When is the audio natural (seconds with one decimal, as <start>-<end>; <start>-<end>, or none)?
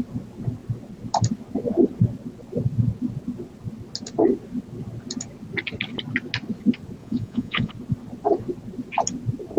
0.0-7.0; 7.7-9.6